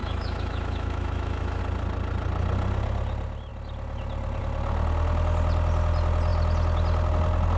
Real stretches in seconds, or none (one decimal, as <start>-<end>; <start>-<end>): 1.6-7.6